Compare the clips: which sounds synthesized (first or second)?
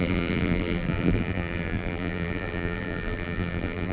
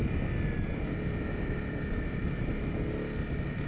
first